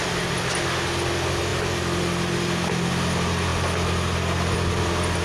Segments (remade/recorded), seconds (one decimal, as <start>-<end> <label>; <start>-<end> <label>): 0.0-5.2 recorded